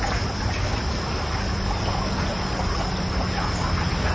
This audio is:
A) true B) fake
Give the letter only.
A